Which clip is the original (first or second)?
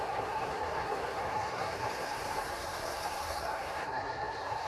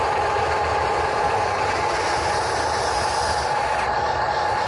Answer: second